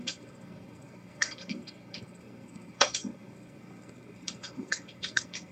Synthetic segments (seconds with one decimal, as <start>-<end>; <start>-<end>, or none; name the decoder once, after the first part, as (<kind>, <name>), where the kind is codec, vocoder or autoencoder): 0.0-5.5 (codec, SNAC)